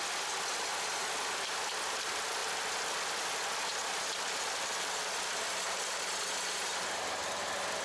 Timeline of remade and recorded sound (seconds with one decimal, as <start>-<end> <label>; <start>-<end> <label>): 0.0-7.8 recorded